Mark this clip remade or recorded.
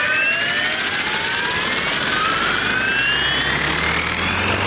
recorded